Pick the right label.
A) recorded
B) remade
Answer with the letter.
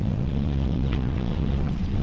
B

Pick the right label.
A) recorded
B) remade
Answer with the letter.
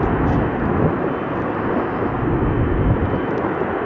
A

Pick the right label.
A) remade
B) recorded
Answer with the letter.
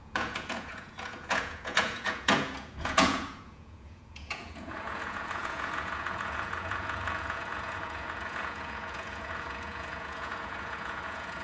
A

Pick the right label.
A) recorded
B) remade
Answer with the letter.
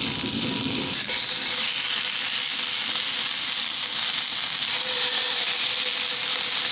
A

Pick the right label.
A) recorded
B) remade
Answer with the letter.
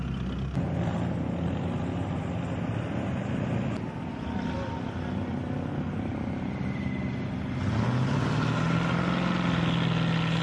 A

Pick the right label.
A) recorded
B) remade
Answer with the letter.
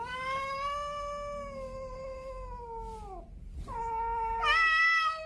A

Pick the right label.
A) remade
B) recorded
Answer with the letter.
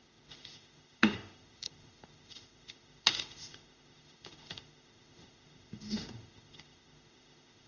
A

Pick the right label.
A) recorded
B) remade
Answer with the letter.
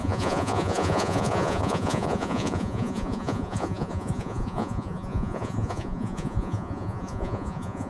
B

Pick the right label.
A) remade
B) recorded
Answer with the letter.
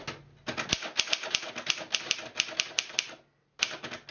B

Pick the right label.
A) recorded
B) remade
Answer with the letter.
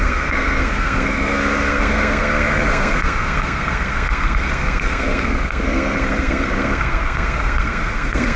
B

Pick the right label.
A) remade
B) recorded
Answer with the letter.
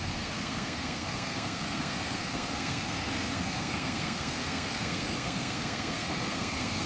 A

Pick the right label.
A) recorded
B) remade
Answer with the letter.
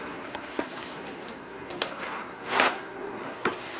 B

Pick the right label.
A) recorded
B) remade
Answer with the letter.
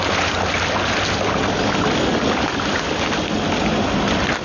A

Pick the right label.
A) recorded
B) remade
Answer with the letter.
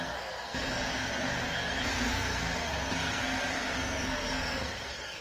B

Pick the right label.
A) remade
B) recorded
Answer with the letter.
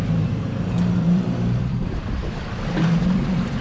A